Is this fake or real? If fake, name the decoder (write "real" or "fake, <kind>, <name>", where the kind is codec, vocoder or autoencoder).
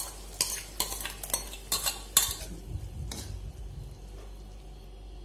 real